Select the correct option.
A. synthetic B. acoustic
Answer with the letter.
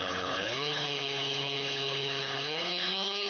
A